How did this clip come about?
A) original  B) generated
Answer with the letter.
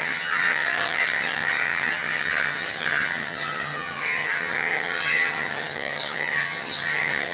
B